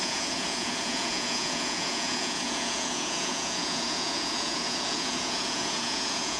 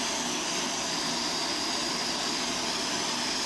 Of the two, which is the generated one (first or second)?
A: first